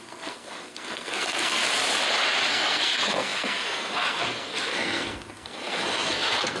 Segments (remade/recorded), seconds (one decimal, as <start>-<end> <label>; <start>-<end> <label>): 0.0-1.6 remade; 1.6-2.5 recorded; 2.5-6.6 remade